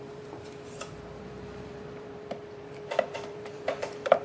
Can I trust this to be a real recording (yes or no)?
no